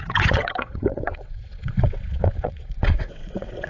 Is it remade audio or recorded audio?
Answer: remade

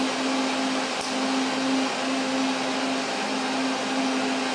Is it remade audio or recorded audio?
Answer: recorded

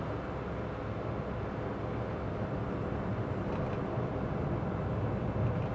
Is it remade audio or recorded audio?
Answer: recorded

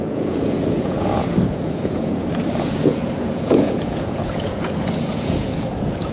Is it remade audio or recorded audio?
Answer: remade